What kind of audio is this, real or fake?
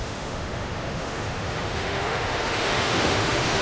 fake